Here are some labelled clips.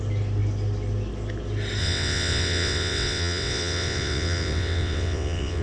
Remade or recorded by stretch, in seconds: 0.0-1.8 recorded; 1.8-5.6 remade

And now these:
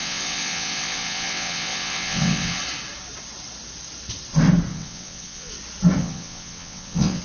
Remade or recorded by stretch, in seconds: 0.0-2.6 remade; 2.6-4.7 recorded; 4.7-5.5 remade; 5.5-6.0 recorded; 6.0-7.2 remade

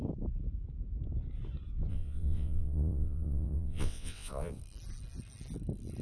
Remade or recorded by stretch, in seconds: 0.0-1.9 recorded; 1.9-4.6 remade; 4.6-6.0 recorded

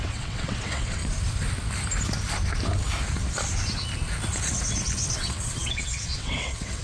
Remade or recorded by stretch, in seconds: 0.0-1.0 remade; 1.0-5.1 recorded; 5.1-6.8 remade

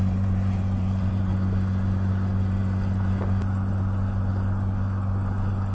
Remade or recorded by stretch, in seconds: 0.0-5.7 recorded